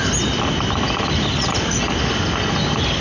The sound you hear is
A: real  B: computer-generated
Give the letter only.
A